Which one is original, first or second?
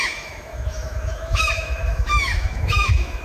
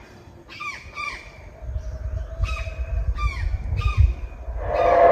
second